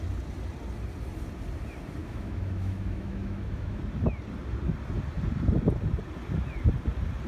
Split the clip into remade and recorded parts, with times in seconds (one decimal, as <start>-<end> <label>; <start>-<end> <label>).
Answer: 0.0-2.0 recorded; 2.0-3.8 remade; 3.8-7.3 recorded